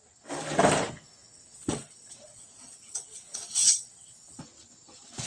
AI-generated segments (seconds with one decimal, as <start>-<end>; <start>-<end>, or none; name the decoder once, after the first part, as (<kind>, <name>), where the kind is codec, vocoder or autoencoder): 1.2-4.4 (vocoder, WaveNeXt)